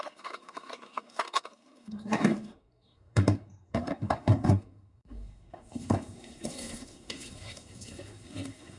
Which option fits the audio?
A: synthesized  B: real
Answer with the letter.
A